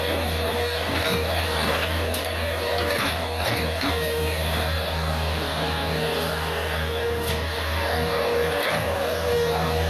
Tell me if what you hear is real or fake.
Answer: fake